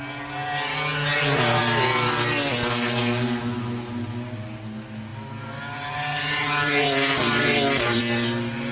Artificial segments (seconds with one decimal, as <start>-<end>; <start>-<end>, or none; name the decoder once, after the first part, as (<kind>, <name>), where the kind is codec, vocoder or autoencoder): 1.1-1.6 (vocoder, BigVGAN v2); 6.1-8.0